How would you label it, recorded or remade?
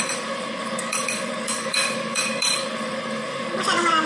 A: remade